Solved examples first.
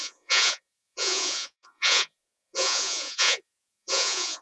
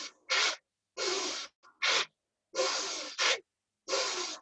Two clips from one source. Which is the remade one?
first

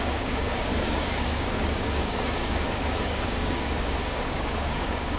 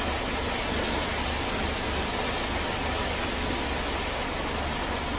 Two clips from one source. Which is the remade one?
first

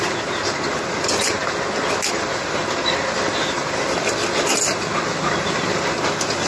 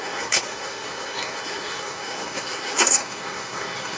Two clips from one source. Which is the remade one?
second